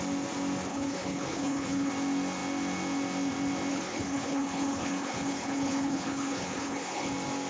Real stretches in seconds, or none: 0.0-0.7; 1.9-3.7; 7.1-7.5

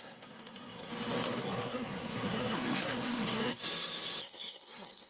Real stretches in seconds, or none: 0.9-1.4; 3.6-4.2

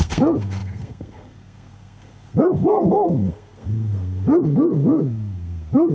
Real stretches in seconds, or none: none

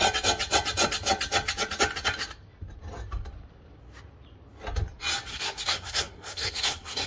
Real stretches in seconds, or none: 0.0-5.3

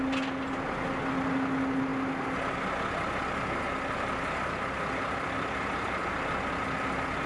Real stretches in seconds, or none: 0.0-7.3

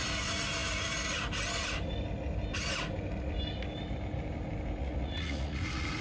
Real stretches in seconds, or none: 0.0-4.8

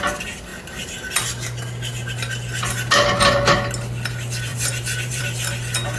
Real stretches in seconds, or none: 0.0-4.5; 5.2-6.0